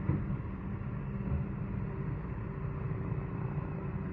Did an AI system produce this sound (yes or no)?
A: yes